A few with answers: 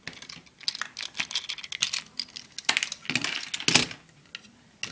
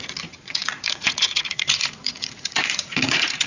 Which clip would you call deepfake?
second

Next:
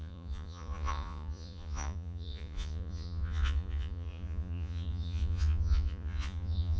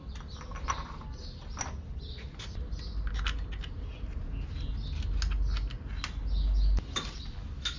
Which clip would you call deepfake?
first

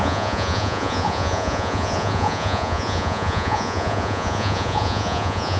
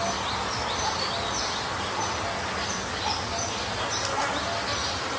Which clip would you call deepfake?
first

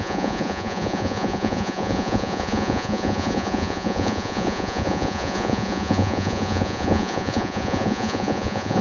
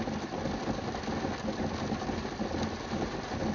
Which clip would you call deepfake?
first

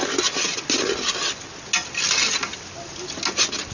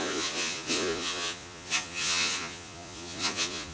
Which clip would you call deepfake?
second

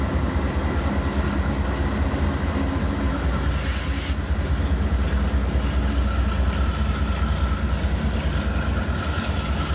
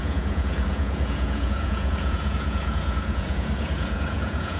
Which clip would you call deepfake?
second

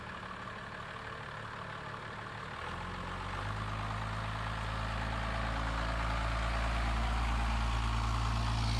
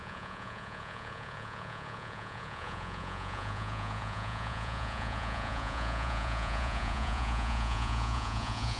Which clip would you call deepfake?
second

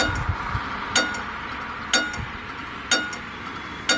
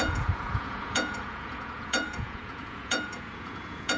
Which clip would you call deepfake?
second